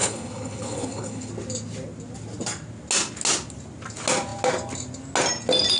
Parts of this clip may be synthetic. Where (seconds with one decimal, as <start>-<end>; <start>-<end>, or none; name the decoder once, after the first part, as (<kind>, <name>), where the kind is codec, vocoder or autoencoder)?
0.0-1.3 (codec, HILCodec)